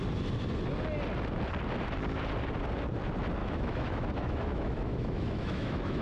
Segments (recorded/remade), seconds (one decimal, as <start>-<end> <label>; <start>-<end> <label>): 0.0-3.4 recorded; 3.4-6.0 remade

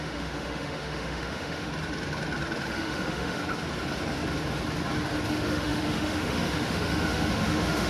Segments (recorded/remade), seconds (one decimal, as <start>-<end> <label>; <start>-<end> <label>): 0.0-1.7 remade; 1.7-2.7 recorded; 2.7-3.4 remade; 3.4-5.3 recorded; 5.3-7.9 remade